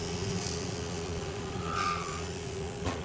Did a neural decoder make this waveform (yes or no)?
yes